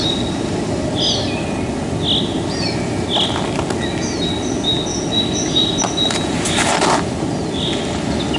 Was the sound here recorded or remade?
recorded